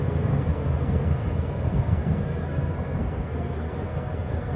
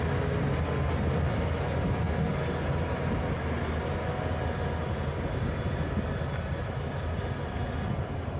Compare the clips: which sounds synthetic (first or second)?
first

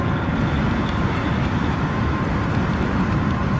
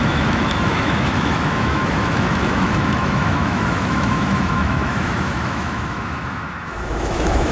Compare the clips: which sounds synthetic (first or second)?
second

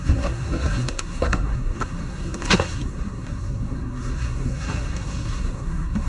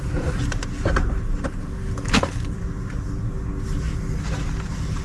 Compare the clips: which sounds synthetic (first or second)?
first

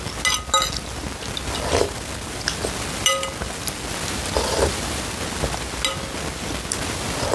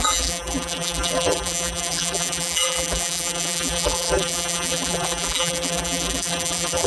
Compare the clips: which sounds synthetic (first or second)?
second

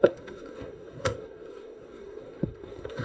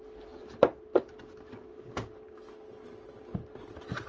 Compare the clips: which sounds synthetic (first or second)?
first